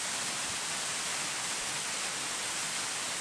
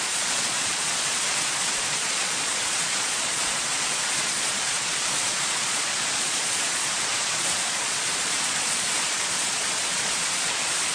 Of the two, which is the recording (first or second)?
first